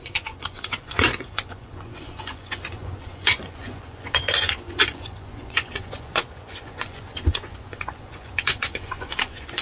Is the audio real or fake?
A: fake